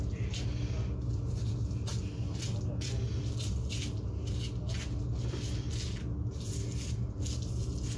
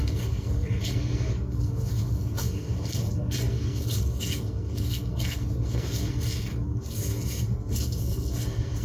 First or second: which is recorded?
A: first